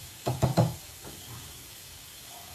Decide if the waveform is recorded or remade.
remade